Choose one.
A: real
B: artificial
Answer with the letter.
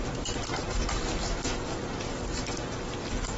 B